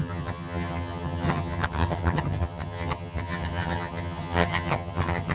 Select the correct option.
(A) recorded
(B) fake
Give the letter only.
B